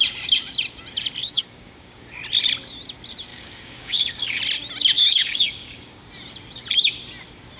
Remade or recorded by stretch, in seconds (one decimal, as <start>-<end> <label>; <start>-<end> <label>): 0.0-1.2 recorded; 1.2-2.0 remade; 2.0-3.3 recorded; 3.3-4.4 remade; 4.4-5.0 recorded; 5.0-6.1 remade; 6.1-7.6 recorded

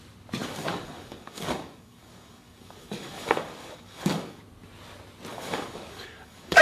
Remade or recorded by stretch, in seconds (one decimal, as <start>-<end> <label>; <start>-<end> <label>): 0.0-0.4 recorded; 0.4-4.4 remade; 4.4-5.3 recorded; 5.3-6.6 remade

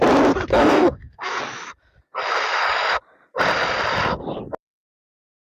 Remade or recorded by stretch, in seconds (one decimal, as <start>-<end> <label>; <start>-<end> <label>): 0.0-0.5 recorded; 0.5-1.4 remade; 1.4-5.5 recorded

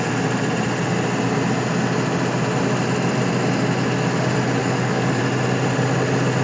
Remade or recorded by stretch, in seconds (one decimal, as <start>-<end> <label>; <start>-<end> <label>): 0.0-4.6 recorded; 4.6-5.2 remade; 5.2-6.4 recorded